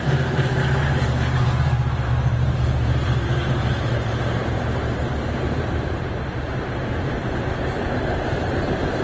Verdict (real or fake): fake